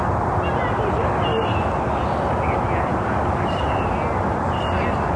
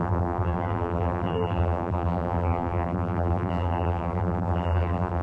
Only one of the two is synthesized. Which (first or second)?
second